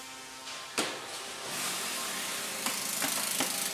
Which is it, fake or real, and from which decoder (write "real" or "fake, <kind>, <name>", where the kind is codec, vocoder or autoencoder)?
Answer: real